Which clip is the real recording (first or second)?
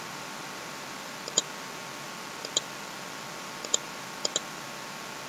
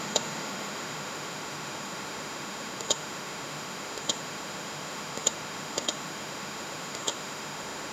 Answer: first